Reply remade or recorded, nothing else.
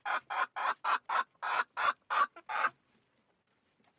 remade